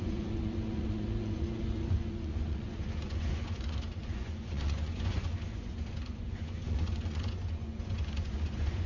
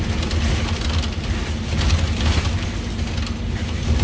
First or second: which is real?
second